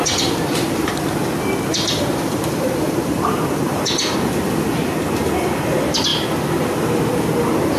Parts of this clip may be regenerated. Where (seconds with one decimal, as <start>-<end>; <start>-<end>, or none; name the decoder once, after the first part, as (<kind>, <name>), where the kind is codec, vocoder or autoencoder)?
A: 1.7-3.8 (vocoder, BigVGAN v2)